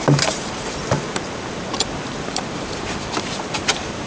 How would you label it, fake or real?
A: fake